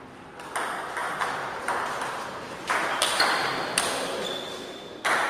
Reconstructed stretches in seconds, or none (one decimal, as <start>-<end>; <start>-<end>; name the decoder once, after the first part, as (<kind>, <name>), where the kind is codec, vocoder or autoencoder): 1.0-3.9 (vocoder, BigVGAN v2)